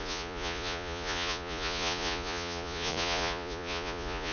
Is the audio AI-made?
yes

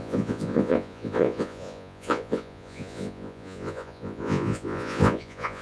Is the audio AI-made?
yes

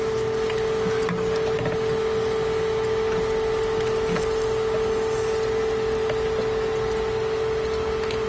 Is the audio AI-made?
no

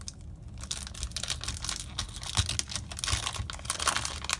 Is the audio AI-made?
no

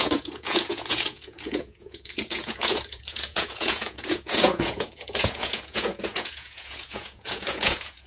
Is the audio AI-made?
yes